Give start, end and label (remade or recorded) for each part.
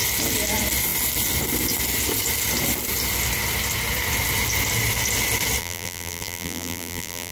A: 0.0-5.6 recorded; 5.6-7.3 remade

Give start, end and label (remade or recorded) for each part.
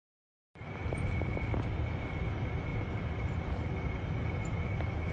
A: 0.0-0.5 recorded; 0.5-1.8 remade; 1.8-2.7 recorded; 2.7-3.7 remade; 3.7-5.1 recorded